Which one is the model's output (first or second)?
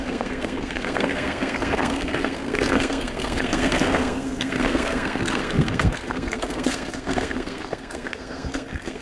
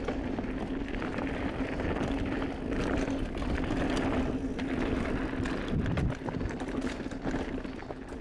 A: first